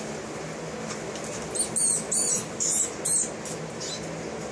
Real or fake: real